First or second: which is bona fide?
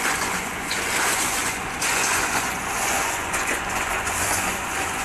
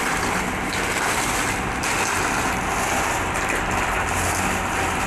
second